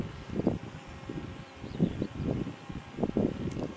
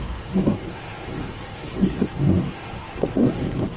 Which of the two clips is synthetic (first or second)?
second